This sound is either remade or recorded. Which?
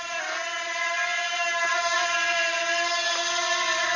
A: recorded